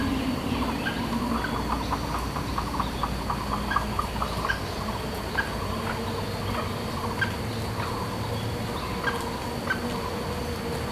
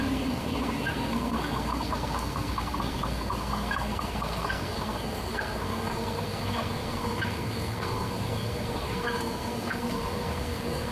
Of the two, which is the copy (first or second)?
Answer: second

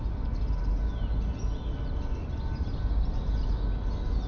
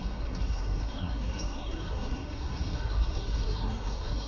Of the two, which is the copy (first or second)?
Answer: second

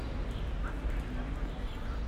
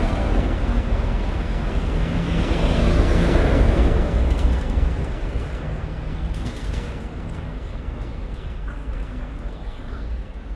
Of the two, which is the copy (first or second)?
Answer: second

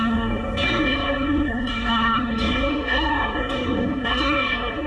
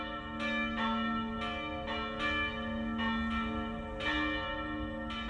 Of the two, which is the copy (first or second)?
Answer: first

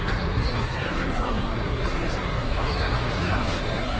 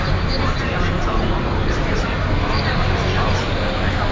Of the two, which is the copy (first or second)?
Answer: first